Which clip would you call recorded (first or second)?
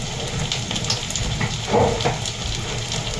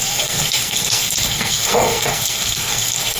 first